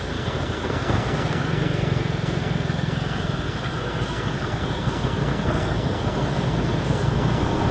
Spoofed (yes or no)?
yes